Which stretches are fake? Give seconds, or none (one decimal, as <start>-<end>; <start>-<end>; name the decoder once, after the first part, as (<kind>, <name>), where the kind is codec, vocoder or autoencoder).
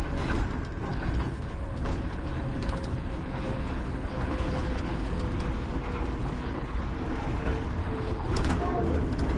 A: 0.9-5.2 (codec, HILCodec); 6.2-6.8; 7.8-8.5